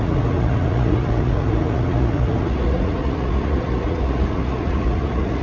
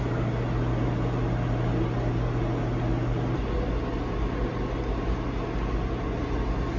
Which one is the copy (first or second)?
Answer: first